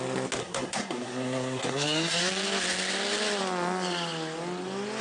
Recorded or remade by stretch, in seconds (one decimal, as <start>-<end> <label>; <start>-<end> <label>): 0.0-0.4 recorded; 0.4-2.3 remade; 2.3-5.0 recorded